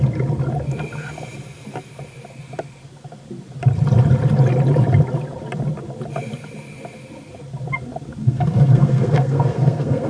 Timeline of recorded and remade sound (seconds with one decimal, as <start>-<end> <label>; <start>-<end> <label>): 0.0-8.2 recorded; 8.2-10.1 remade